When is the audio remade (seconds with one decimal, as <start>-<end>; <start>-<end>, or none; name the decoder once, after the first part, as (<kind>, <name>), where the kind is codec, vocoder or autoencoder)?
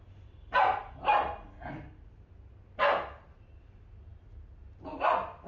none